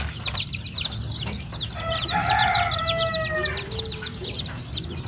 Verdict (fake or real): real